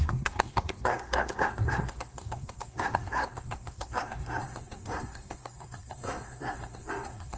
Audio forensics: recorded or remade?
remade